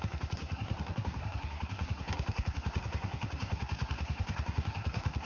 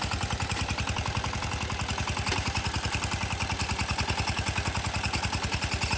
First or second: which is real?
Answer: second